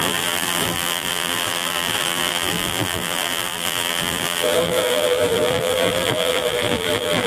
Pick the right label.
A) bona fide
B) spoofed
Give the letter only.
B